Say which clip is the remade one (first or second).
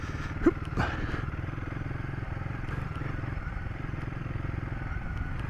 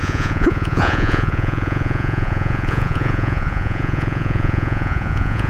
second